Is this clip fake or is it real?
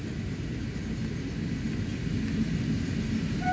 real